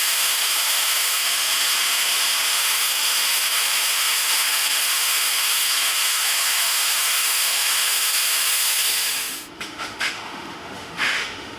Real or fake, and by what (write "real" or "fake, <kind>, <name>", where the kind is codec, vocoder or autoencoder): fake, autoencoder, DAC-VAE